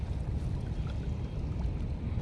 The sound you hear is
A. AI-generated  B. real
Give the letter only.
B